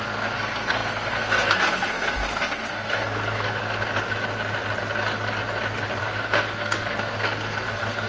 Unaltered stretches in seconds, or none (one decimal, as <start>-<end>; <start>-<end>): 3.6-6.0

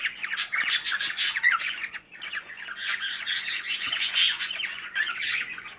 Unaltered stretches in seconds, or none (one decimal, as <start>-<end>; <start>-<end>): none

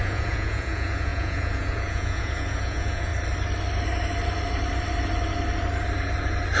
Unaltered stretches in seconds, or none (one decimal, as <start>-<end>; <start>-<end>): 3.1-6.6

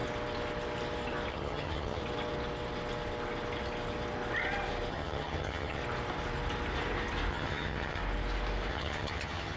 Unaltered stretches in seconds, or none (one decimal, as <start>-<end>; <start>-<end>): 0.0-1.3; 2.0-4.9; 5.8-7.3; 8.0-8.7

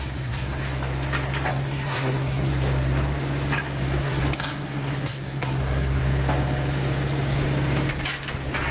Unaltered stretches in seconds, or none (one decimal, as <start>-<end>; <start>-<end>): 0.6-1.5; 2.5-4.0; 6.0-8.7

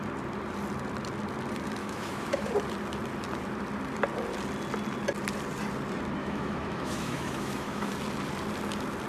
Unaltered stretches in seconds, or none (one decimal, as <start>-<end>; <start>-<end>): 0.0-1.8; 2.5-6.2; 7.9-9.1

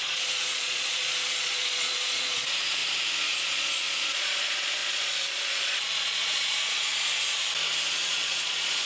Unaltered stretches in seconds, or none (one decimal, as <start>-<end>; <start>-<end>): 2.8-3.5; 6.9-7.9

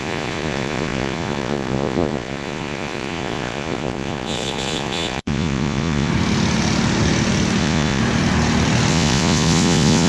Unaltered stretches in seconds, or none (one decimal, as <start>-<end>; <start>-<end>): 6.1-7.6; 8.0-8.9